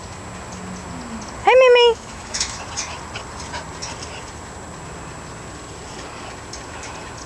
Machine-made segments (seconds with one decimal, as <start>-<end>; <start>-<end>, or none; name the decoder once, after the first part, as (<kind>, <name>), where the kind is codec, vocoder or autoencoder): 1.4-2.6 (autoencoder, DAC-VAE)

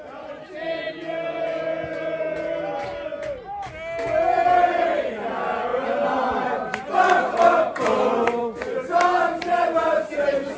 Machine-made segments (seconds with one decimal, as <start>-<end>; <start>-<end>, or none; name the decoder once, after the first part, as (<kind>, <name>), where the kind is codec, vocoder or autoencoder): none

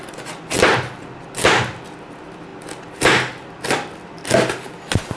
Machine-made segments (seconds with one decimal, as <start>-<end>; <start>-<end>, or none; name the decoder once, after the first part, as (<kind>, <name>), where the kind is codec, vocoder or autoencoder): none